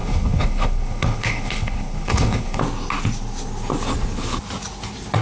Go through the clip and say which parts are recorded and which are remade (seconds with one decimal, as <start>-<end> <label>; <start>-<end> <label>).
0.0-2.6 remade; 2.6-5.2 recorded